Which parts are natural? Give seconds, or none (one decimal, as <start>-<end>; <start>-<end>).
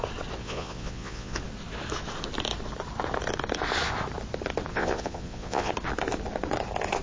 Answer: 0.0-0.4; 1.4-4.7; 5.7-7.0